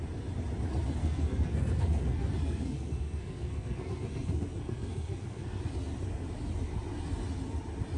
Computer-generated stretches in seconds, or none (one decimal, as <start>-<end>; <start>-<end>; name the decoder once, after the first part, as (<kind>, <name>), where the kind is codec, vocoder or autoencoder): 1.0-5.6 (codec, SNAC)